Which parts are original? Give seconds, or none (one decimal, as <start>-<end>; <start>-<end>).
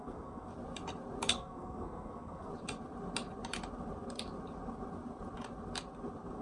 0.5-1.3; 2.5-6.4